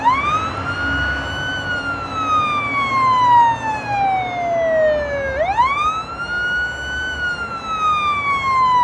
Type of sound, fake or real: real